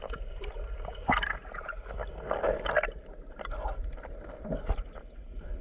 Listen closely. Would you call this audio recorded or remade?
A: recorded